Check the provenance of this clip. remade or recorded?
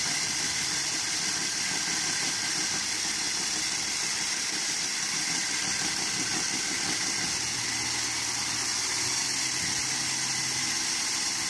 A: recorded